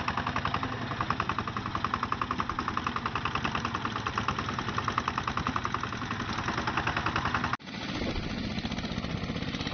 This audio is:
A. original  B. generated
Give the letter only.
A